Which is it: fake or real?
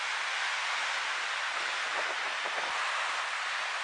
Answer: real